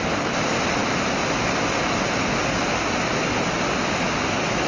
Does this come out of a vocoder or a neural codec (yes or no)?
no